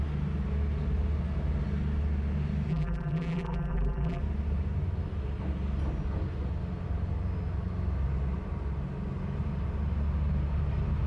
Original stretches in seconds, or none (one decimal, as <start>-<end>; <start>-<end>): 0.0-2.7; 4.2-11.1